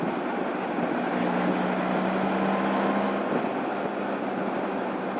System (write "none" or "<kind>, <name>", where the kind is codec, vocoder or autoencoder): none